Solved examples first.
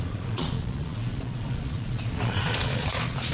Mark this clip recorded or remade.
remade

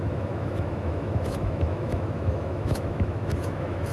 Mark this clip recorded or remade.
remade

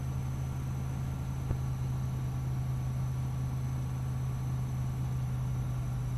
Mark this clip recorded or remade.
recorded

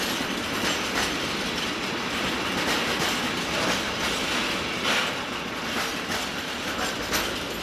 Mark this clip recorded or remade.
recorded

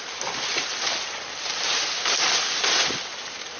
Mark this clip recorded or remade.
recorded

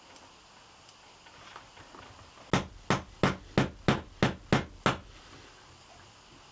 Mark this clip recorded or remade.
recorded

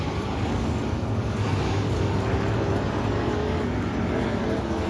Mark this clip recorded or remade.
remade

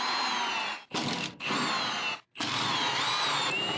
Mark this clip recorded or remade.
recorded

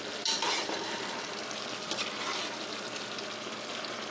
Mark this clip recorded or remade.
recorded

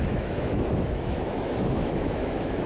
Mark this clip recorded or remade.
remade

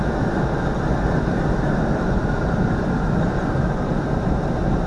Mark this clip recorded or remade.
recorded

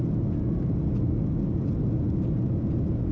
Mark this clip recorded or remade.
recorded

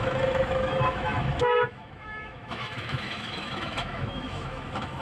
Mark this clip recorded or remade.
remade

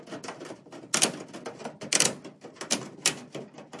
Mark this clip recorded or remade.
recorded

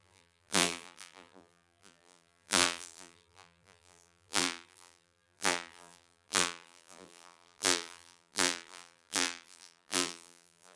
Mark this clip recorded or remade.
remade